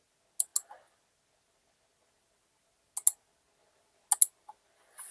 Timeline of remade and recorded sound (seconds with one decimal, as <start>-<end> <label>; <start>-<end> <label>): 0.0-5.1 recorded